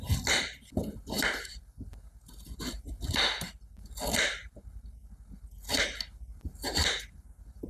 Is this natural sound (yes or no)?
yes